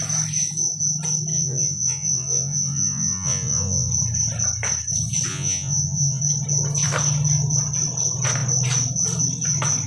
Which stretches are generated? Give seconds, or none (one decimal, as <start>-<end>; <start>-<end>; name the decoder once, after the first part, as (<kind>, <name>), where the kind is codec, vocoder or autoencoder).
1.3-3.9 (vocoder, Vocos); 5.3-6.2